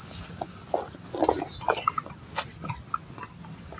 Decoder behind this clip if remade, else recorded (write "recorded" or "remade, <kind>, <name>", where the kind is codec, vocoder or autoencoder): recorded